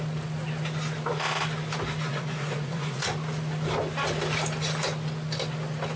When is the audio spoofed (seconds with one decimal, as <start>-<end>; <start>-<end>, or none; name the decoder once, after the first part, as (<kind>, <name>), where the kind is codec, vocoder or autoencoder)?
2.1-3.1 (vocoder, Vocos)